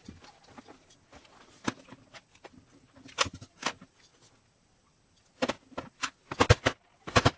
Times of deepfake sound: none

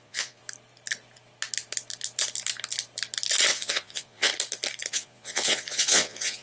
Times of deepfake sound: 0.0-0.4 (vocoder, Vocos); 3.5-4.3; 4.9-6.4

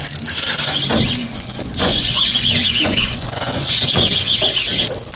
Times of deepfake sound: 1.2-4.3 (vocoder, Vocos)

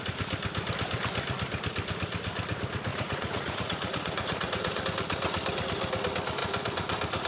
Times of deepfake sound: 2.9-4.8 (vocoder, Vocos)

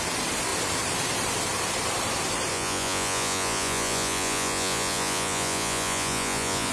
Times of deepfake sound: 2.5-6.7 (vocoder, Vocos)

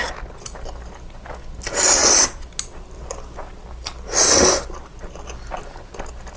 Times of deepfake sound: none

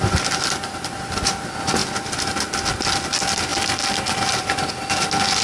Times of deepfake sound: none